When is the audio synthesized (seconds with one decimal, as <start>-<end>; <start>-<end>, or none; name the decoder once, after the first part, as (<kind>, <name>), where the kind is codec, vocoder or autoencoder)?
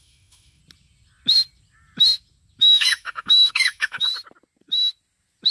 0.0-0.6 (autoencoder, DAC-VAE); 2.6-4.1